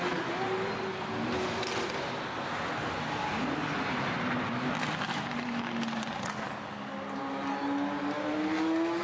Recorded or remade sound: recorded